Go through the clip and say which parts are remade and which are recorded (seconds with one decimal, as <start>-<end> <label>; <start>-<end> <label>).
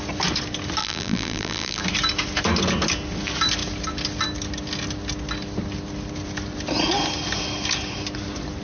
0.0-0.8 recorded; 0.8-1.8 remade; 1.8-8.6 recorded